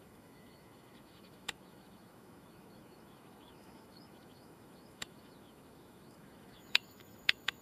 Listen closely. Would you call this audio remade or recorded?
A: remade